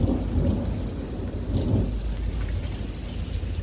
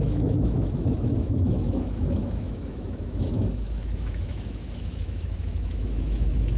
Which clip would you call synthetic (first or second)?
second